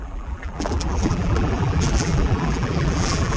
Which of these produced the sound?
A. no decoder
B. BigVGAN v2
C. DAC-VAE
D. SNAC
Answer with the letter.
B